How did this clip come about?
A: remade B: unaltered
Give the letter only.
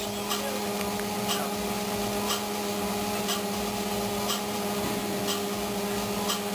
B